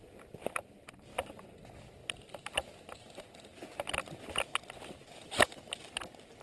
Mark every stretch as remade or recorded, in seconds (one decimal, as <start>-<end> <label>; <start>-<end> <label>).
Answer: 0.0-6.4 recorded